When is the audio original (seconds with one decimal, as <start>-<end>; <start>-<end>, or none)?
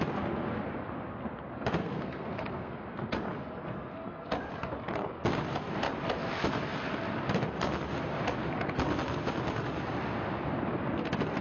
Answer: 0.0-1.8; 2.7-11.4